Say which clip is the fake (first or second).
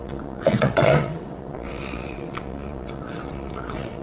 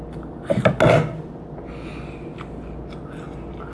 first